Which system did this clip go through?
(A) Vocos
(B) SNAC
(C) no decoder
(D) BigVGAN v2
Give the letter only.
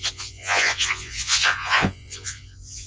A